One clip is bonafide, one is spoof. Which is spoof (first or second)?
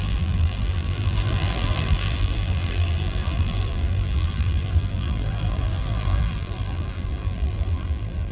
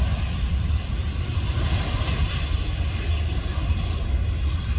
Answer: first